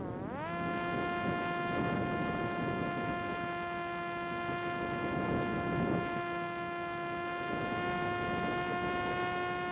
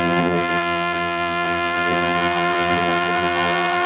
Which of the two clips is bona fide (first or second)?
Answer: first